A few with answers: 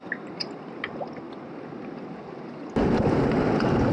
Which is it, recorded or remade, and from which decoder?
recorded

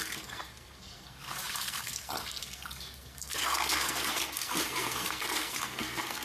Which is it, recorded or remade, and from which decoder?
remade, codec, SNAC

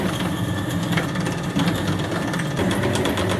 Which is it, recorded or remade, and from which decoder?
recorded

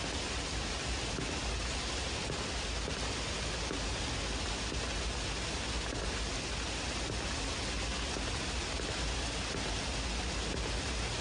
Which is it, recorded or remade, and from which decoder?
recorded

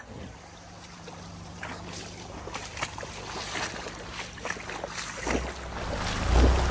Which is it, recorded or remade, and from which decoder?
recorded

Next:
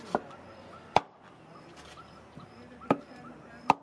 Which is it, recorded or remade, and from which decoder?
recorded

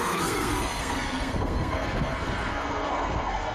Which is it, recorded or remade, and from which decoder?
remade, codec, SNAC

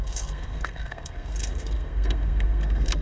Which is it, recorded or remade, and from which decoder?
remade, codec, SNAC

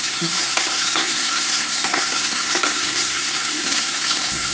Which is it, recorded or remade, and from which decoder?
remade, codec, SNAC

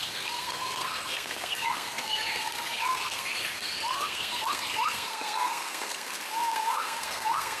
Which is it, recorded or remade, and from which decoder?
remade, codec, SNAC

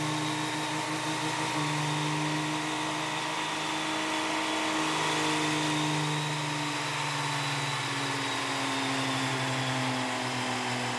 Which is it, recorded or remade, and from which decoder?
recorded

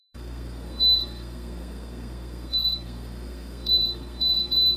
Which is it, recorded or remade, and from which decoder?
remade, codec, SNAC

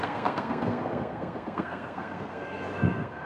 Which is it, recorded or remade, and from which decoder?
remade, codec, SNAC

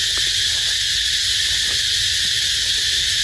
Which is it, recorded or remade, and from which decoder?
recorded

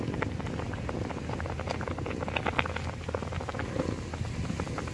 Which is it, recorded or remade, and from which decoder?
recorded